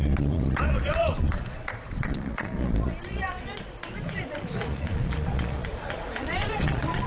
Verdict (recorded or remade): remade